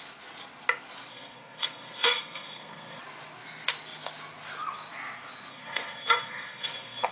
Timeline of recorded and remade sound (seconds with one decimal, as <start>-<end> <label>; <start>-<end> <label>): 0.0-1.1 recorded; 1.1-3.0 remade; 3.0-5.5 recorded; 5.5-7.1 remade